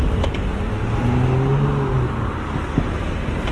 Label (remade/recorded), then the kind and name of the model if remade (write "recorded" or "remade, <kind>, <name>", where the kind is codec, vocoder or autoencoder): recorded